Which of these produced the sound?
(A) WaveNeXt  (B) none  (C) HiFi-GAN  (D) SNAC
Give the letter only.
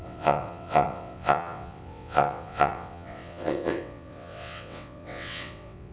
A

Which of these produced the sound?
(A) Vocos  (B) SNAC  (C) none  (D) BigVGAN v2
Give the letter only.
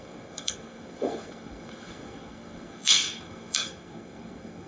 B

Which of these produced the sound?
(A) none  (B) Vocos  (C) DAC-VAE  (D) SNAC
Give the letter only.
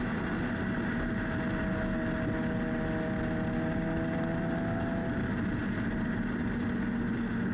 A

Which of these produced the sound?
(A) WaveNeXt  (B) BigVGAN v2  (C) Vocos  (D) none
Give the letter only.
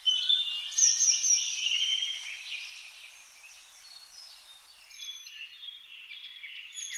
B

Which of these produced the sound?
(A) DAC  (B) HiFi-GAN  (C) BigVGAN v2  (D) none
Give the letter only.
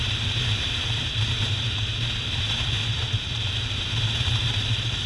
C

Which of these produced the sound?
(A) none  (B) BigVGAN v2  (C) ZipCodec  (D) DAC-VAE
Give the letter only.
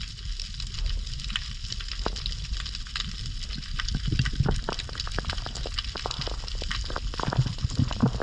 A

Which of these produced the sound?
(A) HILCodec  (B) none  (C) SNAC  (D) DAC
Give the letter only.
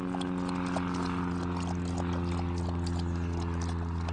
B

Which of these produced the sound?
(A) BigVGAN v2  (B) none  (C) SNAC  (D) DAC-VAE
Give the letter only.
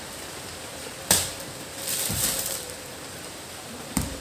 A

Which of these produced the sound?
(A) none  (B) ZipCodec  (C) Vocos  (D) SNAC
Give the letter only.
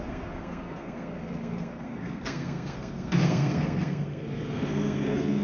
D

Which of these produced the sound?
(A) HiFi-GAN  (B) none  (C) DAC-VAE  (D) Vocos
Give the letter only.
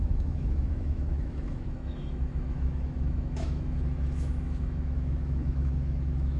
C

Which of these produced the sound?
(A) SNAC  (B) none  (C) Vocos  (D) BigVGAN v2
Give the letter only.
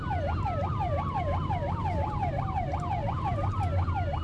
B